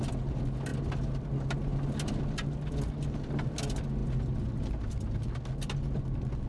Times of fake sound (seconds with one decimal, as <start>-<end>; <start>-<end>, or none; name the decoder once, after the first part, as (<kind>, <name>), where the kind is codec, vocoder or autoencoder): none